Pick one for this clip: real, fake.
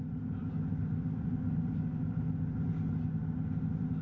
real